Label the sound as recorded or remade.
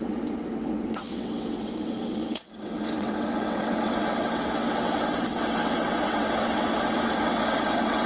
remade